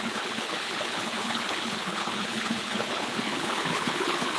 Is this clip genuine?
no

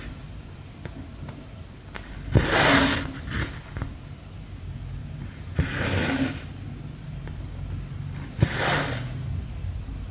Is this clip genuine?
yes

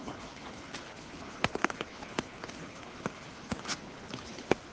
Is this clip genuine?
no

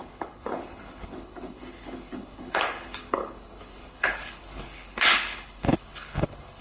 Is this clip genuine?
no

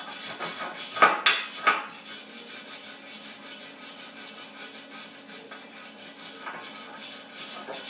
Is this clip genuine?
yes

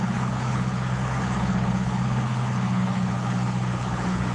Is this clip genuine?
no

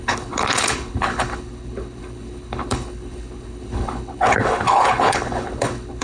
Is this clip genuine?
no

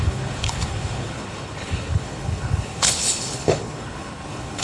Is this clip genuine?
no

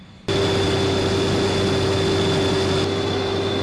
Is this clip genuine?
yes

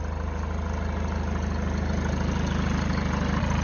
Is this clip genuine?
yes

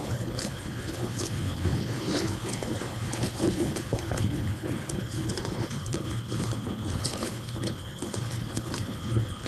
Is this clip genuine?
no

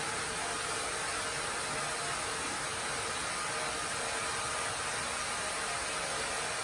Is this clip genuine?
yes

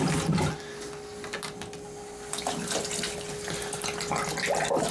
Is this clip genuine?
yes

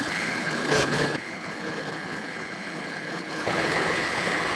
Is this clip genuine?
no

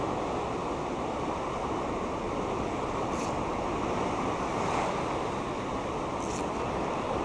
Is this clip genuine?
yes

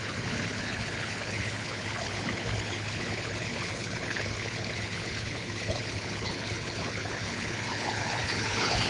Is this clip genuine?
no